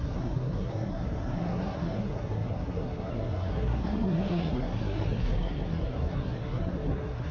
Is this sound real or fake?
fake